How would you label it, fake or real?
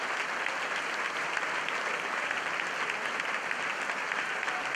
real